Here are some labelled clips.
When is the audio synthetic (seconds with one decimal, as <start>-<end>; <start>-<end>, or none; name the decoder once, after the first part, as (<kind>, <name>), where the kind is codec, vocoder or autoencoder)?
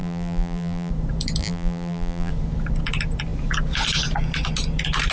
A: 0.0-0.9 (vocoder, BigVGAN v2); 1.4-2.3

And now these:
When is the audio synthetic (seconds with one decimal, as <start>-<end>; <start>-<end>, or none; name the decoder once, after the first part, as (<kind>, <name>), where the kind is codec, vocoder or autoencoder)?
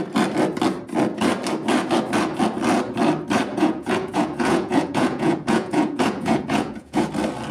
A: 3.5-7.1 (vocoder, Vocos)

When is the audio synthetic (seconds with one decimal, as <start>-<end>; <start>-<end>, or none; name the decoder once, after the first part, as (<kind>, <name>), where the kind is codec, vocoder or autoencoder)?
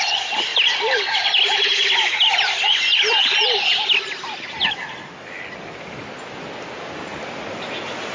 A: none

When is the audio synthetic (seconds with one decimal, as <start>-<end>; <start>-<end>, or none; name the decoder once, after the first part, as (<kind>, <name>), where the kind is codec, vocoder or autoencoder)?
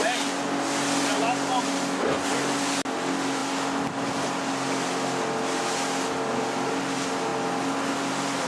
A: none